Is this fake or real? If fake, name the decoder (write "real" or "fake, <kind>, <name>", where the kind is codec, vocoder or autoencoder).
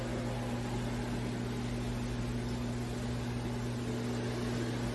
real